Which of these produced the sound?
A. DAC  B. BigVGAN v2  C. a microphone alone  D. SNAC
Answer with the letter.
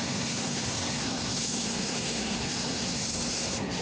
D